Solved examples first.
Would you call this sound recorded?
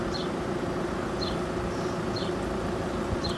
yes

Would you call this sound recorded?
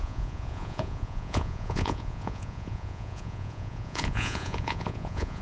no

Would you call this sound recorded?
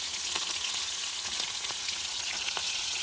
no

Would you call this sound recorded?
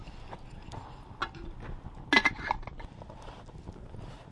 yes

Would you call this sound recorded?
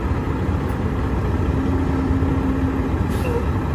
yes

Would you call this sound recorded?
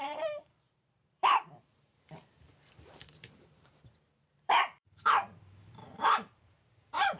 no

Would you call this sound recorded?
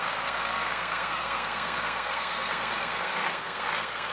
no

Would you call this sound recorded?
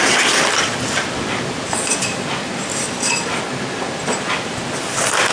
yes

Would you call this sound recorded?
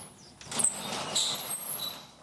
yes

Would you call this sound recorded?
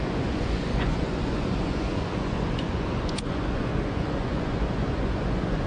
no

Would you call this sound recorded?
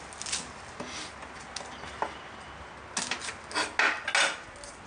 yes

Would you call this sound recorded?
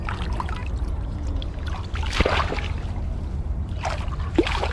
yes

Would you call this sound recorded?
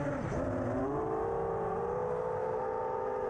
yes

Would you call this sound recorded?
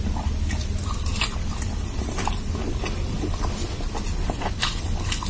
yes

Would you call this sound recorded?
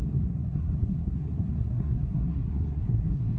no